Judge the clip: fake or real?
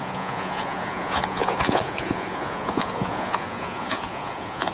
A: fake